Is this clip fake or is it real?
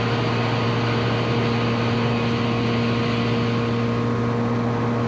real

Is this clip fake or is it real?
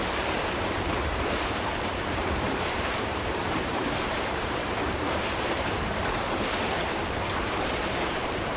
fake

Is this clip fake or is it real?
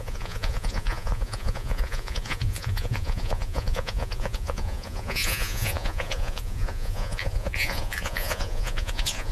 fake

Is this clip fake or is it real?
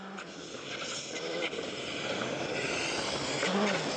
real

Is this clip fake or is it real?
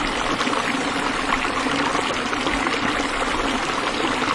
real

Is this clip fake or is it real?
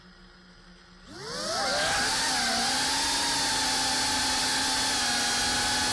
real